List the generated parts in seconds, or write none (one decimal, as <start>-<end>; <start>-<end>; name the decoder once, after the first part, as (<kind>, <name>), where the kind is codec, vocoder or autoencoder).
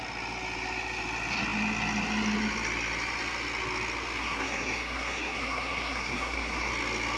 4.2-6.7 (codec, SNAC)